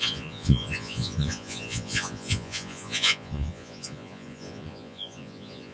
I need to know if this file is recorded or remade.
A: remade